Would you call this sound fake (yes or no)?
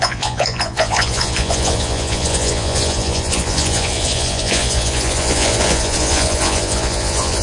yes